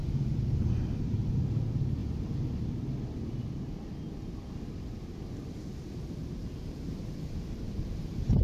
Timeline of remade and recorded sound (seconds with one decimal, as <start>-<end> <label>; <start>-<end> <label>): 0.0-2.0 remade; 2.0-6.0 recorded; 6.0-8.4 remade